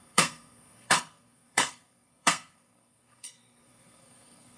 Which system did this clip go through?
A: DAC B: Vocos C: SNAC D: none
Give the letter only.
C